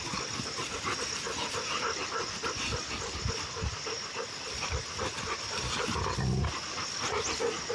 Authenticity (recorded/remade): recorded